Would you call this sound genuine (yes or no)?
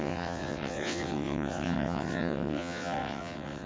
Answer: no